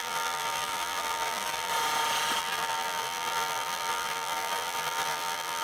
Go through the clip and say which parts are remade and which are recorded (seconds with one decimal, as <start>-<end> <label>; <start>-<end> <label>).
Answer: 0.0-1.7 remade; 1.7-2.4 recorded; 2.4-5.6 remade